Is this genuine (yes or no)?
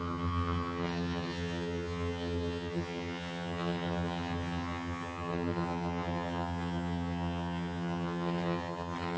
no